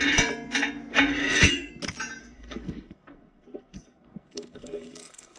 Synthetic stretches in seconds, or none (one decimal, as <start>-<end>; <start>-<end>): 1.2-1.7; 2.2-5.4